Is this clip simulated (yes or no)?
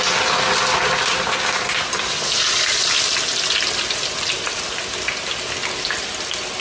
no